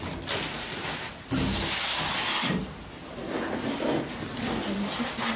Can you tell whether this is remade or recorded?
recorded